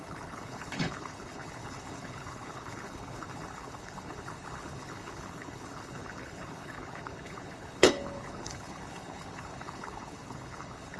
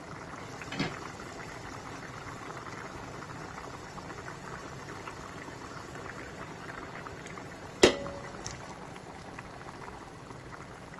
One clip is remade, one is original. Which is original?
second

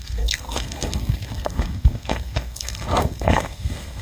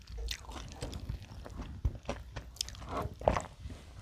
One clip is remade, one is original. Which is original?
second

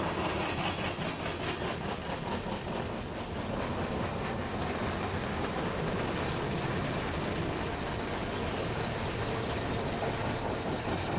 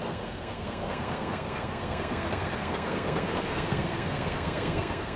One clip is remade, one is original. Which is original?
first